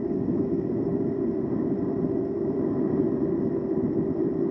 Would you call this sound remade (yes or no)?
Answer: yes